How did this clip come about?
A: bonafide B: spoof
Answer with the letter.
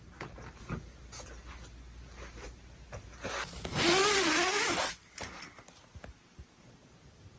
A